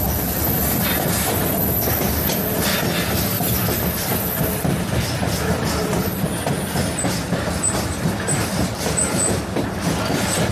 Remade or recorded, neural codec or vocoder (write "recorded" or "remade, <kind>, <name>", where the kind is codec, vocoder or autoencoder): remade, vocoder, BigVGAN v2